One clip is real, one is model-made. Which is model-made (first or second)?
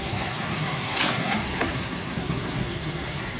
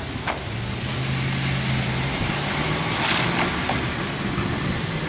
first